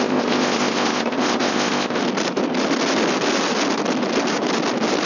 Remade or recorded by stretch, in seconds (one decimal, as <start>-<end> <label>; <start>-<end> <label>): 0.0-2.0 remade; 2.0-5.1 recorded